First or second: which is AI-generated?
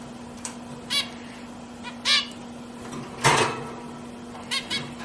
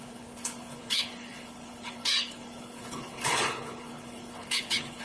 second